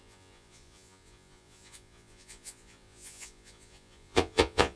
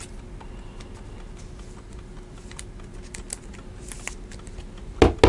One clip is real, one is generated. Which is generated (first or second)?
first